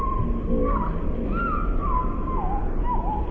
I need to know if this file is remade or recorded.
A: recorded